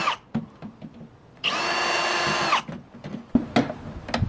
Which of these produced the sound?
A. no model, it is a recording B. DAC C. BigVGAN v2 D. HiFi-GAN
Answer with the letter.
A